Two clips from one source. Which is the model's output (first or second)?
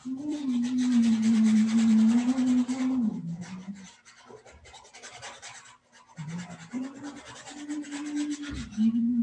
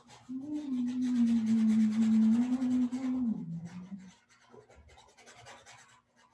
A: first